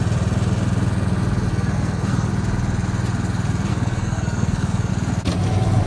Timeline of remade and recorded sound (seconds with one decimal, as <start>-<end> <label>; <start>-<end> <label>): 0.0-1.5 recorded; 1.5-2.3 remade; 2.3-3.7 recorded; 3.7-4.9 remade; 4.9-5.9 recorded